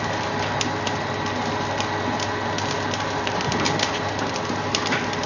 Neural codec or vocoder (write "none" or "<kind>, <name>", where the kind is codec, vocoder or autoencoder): none